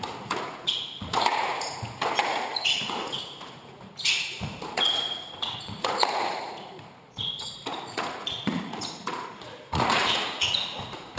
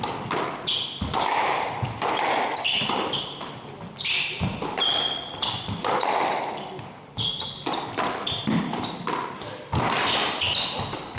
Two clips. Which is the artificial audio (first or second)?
first